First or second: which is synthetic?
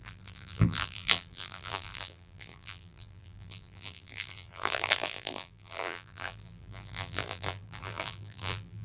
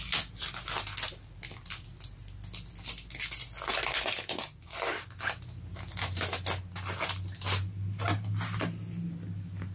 first